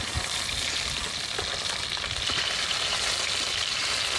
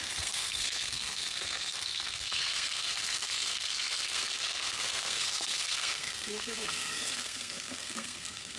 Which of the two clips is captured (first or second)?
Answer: first